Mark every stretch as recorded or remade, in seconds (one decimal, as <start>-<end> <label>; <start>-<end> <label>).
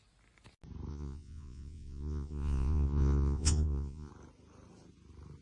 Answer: 0.0-0.9 recorded; 0.9-4.1 remade; 4.1-5.4 recorded